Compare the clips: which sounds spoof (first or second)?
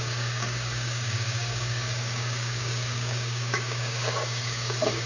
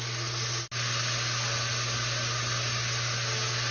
first